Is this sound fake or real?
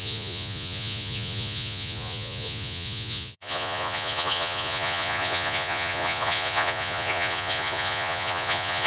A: fake